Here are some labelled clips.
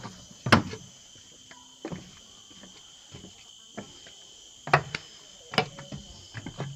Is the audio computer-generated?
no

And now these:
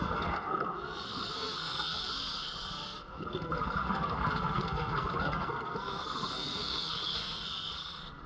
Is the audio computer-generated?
yes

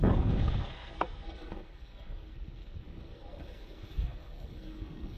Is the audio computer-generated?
yes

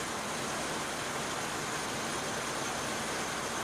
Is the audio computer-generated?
yes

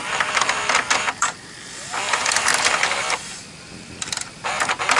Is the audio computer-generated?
yes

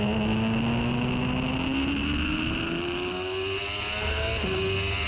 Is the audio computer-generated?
no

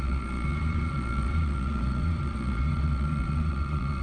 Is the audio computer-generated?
yes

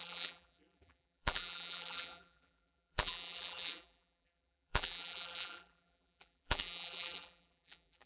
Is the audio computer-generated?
yes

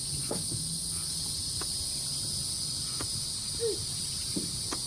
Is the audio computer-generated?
no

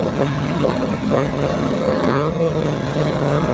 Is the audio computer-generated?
yes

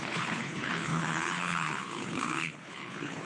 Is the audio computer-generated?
yes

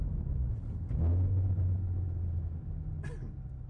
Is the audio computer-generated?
no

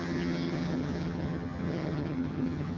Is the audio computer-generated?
yes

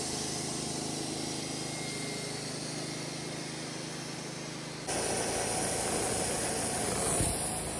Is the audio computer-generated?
no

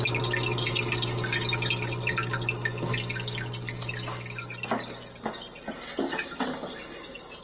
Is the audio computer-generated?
no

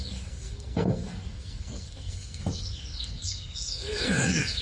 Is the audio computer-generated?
yes